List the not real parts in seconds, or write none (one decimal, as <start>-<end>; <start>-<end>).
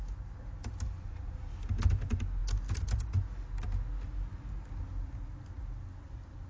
none